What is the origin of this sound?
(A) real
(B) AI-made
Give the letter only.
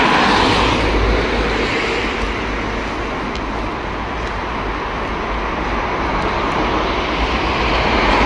A